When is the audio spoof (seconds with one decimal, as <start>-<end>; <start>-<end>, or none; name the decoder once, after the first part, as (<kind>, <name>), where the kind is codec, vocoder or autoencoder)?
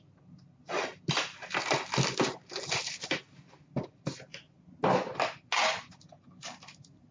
none